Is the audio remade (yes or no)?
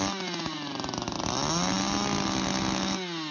no